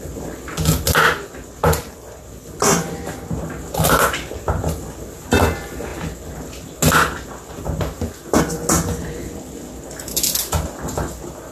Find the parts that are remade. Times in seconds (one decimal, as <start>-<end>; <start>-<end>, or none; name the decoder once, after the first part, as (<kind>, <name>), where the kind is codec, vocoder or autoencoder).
none